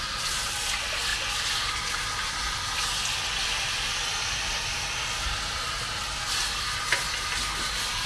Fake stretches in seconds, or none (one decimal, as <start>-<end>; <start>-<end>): none